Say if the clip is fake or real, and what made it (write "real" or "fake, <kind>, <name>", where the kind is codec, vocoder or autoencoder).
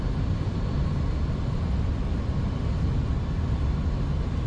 real